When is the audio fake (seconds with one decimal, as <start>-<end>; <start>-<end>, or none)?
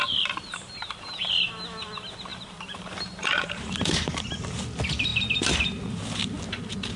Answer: 0.0-1.3; 2.3-4.3